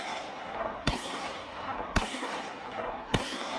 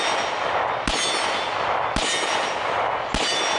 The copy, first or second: first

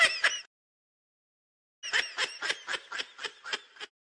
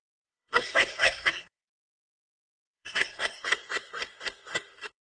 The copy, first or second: second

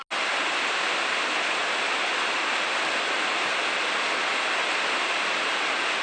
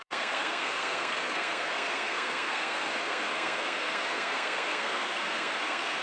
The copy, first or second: second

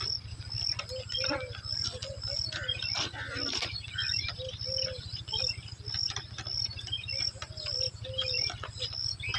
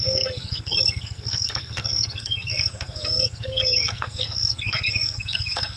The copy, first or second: second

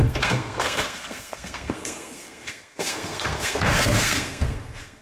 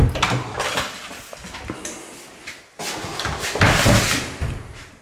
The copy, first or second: first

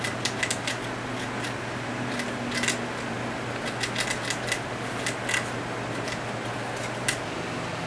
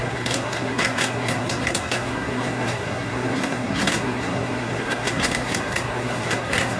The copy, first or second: second